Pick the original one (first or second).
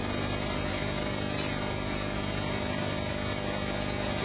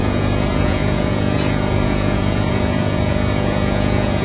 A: first